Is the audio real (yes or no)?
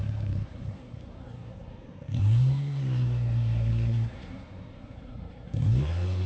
no